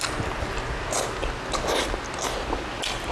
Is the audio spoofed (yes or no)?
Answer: no